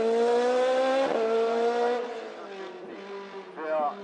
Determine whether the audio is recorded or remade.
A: recorded